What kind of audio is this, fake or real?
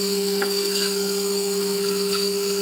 fake